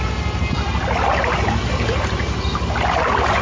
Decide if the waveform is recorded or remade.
recorded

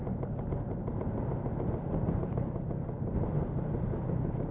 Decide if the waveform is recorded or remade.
recorded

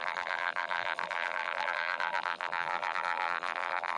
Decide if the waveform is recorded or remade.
remade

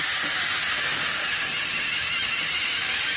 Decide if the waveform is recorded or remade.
recorded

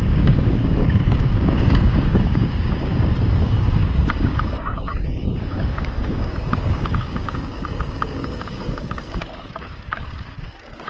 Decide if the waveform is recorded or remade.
remade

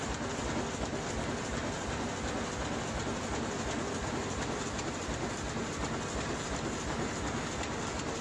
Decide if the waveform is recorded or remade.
recorded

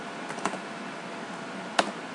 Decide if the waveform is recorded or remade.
recorded